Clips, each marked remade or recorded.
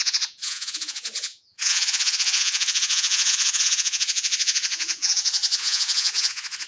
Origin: remade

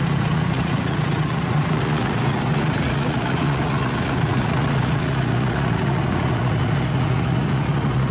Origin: remade